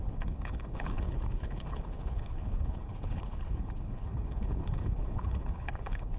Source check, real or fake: fake